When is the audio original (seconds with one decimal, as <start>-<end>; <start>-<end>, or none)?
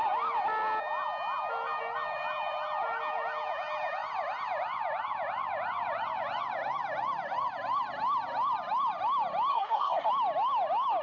0.0-9.5; 10.1-11.0